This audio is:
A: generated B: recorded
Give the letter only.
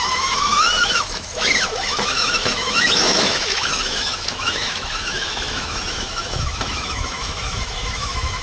A